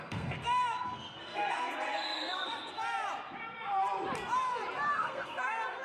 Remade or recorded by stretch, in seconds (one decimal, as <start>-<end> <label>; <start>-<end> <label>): 0.0-2.8 remade; 2.8-4.9 recorded; 4.9-5.8 remade